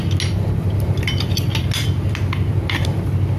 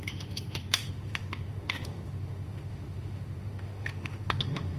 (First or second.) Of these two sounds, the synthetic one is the second